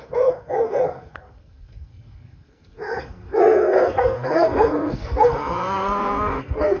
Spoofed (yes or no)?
yes